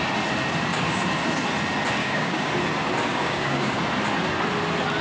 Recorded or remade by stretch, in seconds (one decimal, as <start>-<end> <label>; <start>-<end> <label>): 0.0-2.0 recorded; 2.0-2.5 remade; 2.5-3.1 recorded; 3.1-3.8 remade; 3.8-5.0 recorded